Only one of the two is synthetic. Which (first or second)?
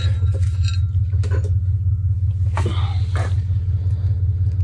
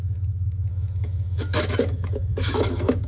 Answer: second